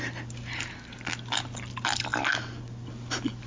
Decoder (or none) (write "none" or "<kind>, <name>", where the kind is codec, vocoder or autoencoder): none